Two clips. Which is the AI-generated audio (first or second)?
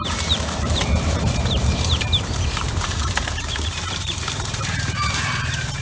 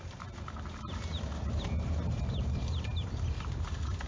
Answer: first